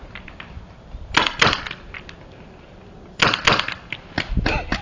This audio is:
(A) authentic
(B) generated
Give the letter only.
A